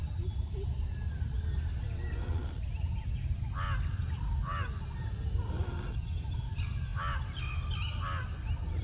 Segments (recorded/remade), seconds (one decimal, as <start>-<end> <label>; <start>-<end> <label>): 0.0-8.8 recorded